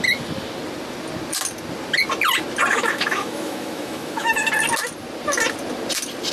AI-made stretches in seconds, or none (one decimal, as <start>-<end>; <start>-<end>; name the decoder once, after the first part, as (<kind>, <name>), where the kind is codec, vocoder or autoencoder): 2.7-4.5 (autoencoder, DAC-VAE)